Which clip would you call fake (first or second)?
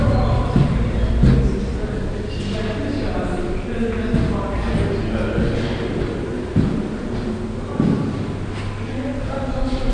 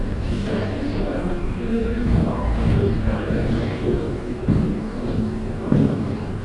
second